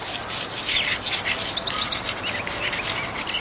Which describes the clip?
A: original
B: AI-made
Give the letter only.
A